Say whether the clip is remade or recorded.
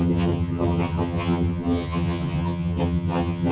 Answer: remade